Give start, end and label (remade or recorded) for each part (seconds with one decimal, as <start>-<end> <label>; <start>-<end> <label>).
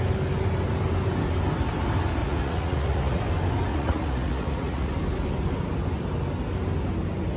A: 0.0-2.2 recorded; 2.2-3.2 remade; 3.2-3.7 recorded; 3.7-4.9 remade; 4.9-7.4 recorded